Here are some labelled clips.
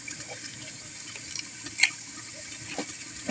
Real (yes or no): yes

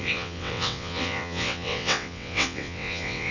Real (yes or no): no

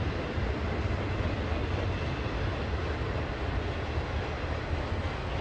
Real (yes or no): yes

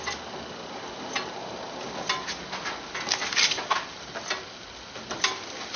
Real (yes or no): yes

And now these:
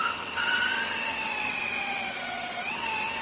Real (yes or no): no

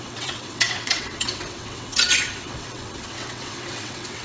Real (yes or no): no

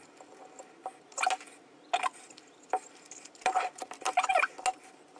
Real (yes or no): yes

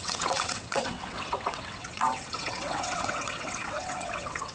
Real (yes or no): no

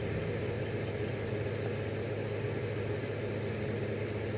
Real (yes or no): yes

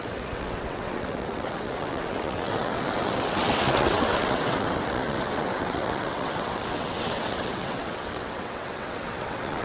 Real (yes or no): no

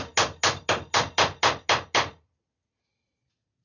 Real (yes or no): yes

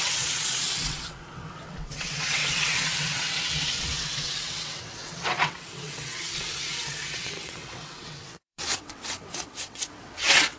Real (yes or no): no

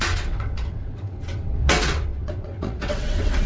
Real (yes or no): no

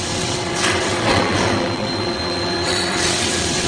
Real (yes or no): no